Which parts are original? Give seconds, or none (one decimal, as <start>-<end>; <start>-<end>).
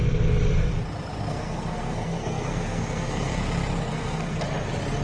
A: 0.0-1.3; 3.4-3.9; 4.4-5.0